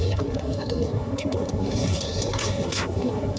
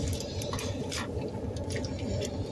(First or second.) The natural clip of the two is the second